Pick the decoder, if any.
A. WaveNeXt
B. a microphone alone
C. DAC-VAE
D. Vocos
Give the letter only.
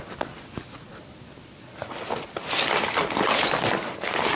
B